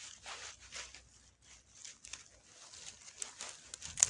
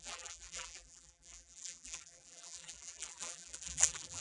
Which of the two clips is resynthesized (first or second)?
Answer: second